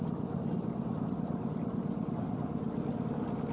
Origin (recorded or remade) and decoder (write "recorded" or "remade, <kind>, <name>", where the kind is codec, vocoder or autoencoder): recorded